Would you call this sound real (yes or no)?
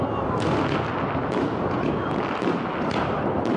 yes